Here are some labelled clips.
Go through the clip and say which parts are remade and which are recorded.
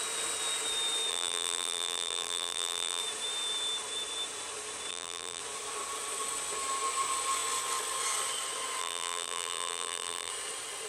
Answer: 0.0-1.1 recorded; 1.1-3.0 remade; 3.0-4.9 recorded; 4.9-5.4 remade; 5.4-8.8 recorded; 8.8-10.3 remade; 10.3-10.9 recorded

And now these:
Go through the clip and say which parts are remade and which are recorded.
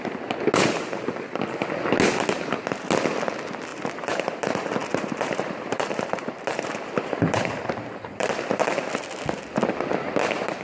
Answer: 0.0-3.7 recorded; 3.7-4.3 remade; 4.3-4.8 recorded; 4.8-8.9 remade; 8.9-10.6 recorded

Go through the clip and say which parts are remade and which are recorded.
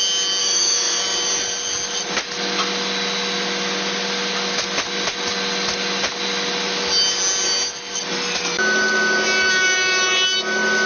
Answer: 0.0-0.4 recorded; 0.4-1.0 remade; 1.0-10.9 recorded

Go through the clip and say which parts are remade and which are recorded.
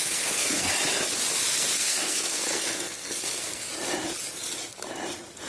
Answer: 0.0-0.7 remade; 0.7-1.5 recorded; 1.5-3.7 remade; 3.7-5.5 recorded